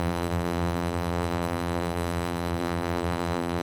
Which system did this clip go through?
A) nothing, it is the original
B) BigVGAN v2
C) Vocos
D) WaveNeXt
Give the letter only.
B